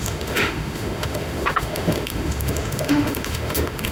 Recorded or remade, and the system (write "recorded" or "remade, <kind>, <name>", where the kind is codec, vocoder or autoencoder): remade, autoencoder, DAC-VAE